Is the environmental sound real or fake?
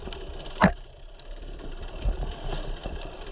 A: real